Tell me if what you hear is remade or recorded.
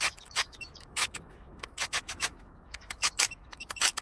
remade